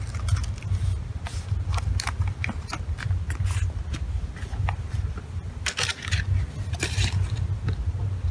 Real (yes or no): yes